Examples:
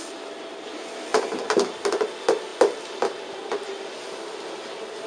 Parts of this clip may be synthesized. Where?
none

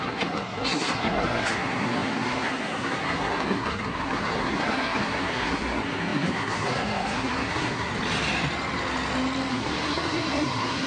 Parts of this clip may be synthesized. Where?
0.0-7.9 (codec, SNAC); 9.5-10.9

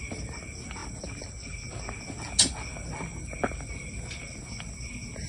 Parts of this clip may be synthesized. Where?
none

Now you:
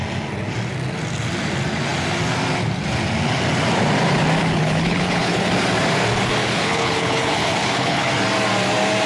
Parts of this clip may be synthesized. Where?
4.4-5.5 (codec, HILCodec); 6.4-8.1